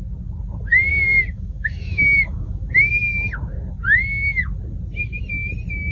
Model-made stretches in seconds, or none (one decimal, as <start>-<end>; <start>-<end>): 0.9-2.9